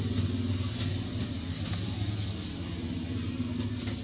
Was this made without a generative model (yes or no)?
yes